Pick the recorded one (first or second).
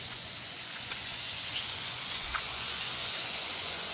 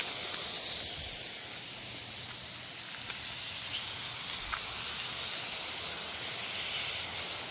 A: second